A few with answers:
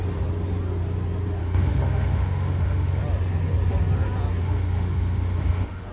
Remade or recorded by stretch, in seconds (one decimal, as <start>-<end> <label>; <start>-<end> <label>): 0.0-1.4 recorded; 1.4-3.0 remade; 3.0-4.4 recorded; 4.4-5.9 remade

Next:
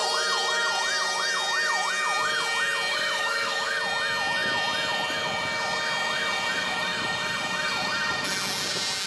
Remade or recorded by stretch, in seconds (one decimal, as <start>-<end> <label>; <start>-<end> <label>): 0.0-2.9 recorded; 2.9-3.8 remade; 3.8-9.1 recorded

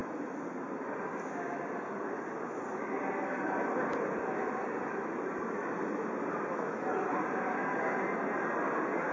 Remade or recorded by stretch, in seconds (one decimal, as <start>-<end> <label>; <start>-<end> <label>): 0.0-9.1 recorded

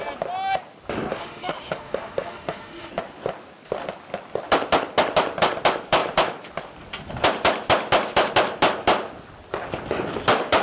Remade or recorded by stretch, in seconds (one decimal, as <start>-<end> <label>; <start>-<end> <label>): 0.0-1.1 recorded; 1.1-2.9 remade; 2.9-10.6 recorded

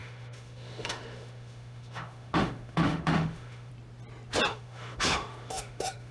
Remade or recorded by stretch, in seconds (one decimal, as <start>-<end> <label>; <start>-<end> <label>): 0.0-3.7 remade; 3.7-4.5 recorded; 4.5-6.1 remade